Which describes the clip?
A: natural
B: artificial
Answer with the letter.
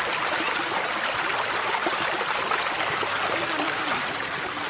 A